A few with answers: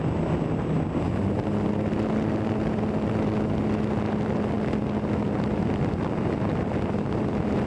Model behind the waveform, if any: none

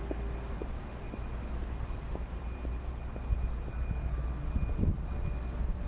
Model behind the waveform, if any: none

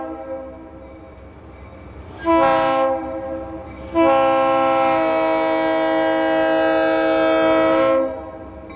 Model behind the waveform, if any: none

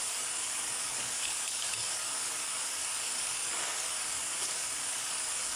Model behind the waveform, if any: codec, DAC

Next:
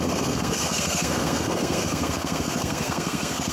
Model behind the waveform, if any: codec, SNAC